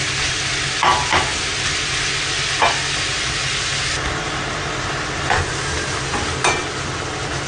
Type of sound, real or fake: real